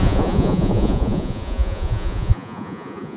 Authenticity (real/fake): fake